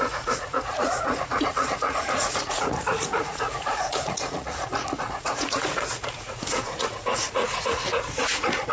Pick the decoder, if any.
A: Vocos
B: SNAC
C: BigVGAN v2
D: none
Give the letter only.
A